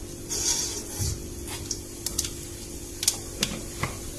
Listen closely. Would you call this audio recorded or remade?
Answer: recorded